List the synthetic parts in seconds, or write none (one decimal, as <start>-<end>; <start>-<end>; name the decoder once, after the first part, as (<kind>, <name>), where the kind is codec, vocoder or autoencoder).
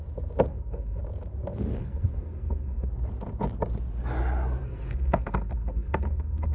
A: 0.5-1.0 (codec, SNAC); 1.8-2.9; 4.6-6.5